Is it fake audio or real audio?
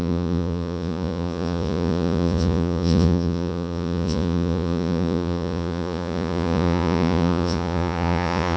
fake